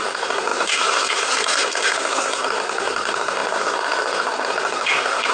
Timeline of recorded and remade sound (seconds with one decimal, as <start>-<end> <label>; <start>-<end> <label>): 0.0-5.3 remade